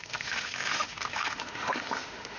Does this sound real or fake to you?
fake